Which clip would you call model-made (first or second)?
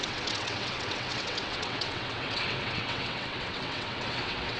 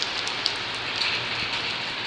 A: first